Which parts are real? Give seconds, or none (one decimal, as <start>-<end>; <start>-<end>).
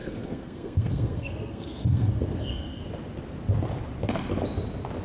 2.8-5.0